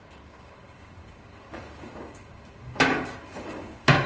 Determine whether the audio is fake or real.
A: fake